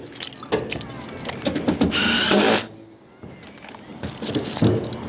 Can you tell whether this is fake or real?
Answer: real